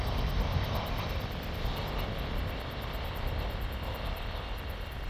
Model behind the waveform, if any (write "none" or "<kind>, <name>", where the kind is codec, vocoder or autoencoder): none